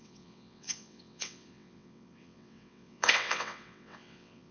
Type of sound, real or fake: fake